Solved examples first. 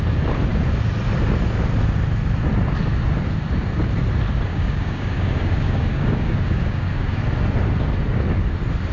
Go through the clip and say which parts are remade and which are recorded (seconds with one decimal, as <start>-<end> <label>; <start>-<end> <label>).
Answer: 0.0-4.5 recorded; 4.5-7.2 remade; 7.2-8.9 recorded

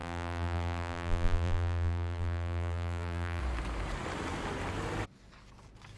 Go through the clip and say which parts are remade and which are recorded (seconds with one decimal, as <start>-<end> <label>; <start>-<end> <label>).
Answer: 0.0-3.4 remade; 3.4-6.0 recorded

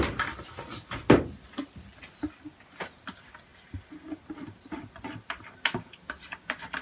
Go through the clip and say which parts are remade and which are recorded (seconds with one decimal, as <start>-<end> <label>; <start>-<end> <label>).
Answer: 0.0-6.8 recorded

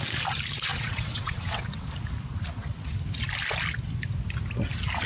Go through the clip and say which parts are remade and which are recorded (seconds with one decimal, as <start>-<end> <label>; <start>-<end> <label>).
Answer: 0.0-0.7 recorded; 0.7-1.9 remade; 1.9-5.1 recorded